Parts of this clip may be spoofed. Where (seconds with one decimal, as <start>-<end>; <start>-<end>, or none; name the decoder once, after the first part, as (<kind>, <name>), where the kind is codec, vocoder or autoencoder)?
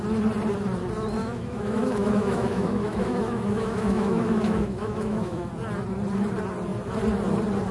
1.2-5.5 (autoencoder, DAC-VAE)